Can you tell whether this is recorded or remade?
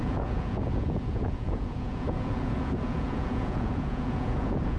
remade